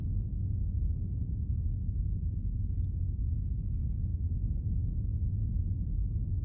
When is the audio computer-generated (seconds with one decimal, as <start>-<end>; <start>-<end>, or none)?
0.0-2.0; 4.1-4.7